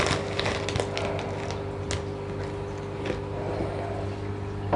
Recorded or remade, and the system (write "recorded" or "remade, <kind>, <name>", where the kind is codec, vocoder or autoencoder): recorded